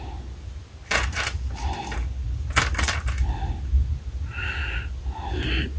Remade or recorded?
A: recorded